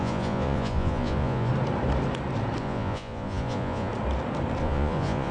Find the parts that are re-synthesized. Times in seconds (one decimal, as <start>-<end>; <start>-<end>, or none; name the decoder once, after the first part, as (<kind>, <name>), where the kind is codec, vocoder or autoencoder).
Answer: 0.0-1.5 (vocoder, Vocos); 2.6-3.9; 4.6-5.3